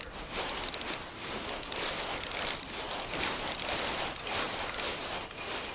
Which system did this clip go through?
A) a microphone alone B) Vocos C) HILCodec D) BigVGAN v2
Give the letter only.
A